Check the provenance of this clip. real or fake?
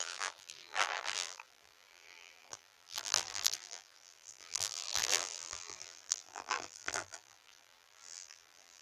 fake